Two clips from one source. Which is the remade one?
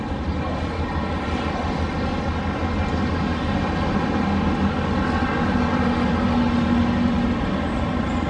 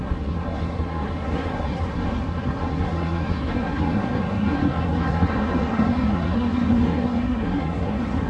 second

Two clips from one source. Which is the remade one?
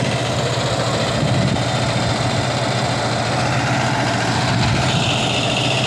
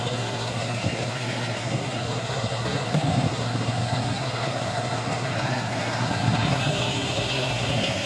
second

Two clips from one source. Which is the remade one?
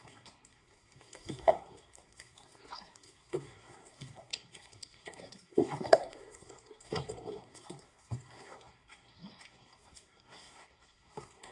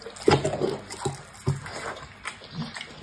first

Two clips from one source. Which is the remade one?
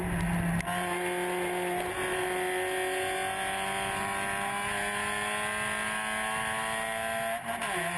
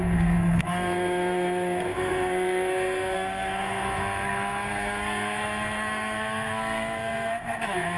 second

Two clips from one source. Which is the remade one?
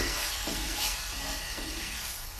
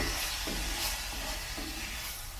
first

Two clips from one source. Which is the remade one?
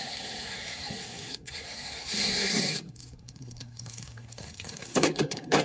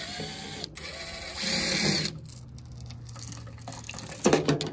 first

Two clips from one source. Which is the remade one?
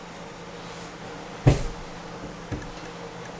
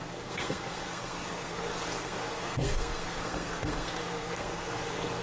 second